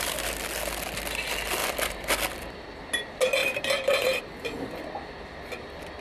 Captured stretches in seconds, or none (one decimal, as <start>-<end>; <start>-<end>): 0.0-1.6; 2.1-3.4; 4.2-6.0